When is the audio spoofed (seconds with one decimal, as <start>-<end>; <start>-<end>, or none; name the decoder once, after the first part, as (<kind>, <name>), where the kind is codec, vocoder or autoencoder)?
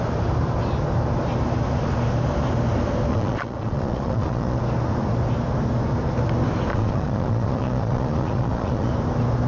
3.1-4.6 (vocoder, Vocos); 6.7-8.9